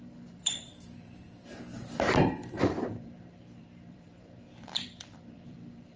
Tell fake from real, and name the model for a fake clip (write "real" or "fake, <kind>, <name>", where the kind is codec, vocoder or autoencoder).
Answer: fake, vocoder, BigVGAN v2